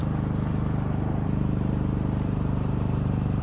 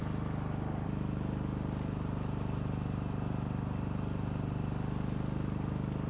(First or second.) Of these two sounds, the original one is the second